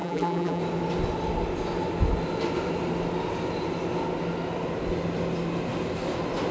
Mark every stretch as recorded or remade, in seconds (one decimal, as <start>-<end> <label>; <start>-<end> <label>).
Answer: 0.0-0.6 remade; 0.6-6.5 recorded